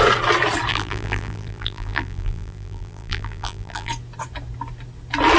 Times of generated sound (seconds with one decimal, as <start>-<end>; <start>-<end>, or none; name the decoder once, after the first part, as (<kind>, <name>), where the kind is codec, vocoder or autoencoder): 0.7-3.9 (vocoder, BigVGAN v2)